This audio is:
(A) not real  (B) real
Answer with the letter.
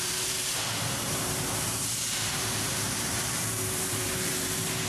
A